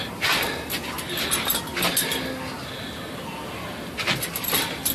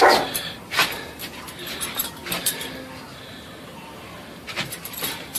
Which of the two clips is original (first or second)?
first